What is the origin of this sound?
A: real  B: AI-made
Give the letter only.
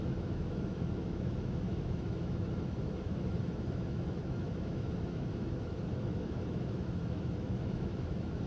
B